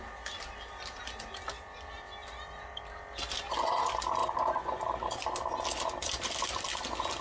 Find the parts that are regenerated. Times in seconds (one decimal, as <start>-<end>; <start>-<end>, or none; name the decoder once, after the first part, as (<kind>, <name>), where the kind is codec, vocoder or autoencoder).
4.2-4.8 (vocoder, Vocos)

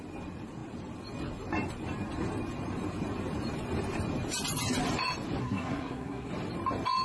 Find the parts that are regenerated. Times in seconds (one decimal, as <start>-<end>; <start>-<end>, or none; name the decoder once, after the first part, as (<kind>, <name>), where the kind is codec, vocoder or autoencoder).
5.4-6.3 (codec, SNAC)

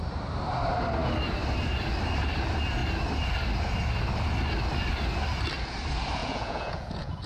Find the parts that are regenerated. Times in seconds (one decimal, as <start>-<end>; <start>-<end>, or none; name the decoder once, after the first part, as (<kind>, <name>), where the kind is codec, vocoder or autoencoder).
6.2-7.3 (vocoder, Vocos)

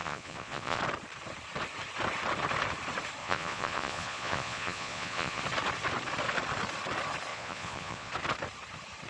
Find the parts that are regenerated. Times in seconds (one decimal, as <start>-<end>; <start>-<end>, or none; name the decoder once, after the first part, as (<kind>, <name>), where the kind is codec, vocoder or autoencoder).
0.0-0.8 (vocoder, Vocos); 3.2-5.4; 7.3-8.1

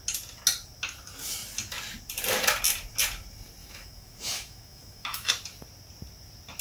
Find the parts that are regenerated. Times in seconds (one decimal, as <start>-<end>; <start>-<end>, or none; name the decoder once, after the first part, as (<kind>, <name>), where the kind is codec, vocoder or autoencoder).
3.6-5.3 (autoencoder, DAC-VAE)

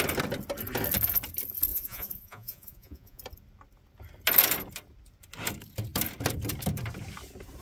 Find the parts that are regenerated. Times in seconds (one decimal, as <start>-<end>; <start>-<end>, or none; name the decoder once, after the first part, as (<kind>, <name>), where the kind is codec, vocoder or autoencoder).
1.7-3.2 (vocoder, Vocos)